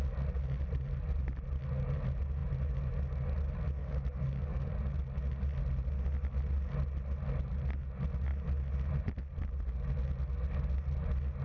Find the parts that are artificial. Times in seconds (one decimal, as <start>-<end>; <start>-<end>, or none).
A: 3.8-4.7

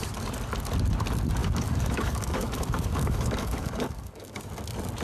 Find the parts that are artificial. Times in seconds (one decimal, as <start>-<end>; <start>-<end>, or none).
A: 1.4-4.4

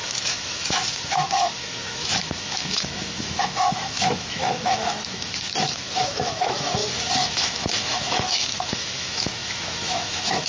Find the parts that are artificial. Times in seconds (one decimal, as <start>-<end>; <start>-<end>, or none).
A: 0.0-6.8; 7.3-10.5

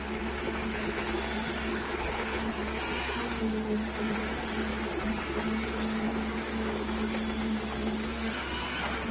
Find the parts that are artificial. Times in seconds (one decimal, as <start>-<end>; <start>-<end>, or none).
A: 0.6-1.1; 1.7-2.5

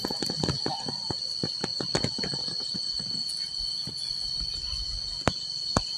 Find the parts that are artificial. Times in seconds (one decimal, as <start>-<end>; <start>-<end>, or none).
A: none